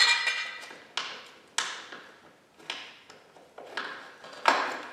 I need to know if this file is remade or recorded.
recorded